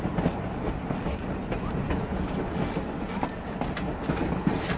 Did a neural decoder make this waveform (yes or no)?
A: no